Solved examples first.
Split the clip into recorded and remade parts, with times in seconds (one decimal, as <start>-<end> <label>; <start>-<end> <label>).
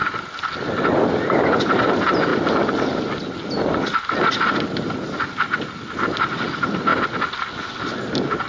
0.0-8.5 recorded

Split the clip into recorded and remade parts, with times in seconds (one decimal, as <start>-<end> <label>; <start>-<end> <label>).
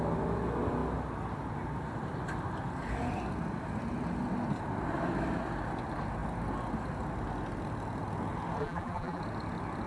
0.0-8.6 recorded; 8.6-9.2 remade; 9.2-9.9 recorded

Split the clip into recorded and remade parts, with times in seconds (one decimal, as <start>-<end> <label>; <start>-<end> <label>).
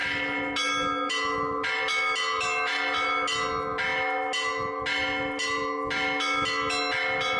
0.0-7.4 recorded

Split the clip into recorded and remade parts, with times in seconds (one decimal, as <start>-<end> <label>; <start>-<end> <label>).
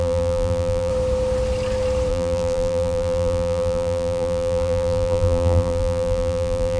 0.0-0.9 remade; 0.9-2.1 recorded; 2.1-6.8 remade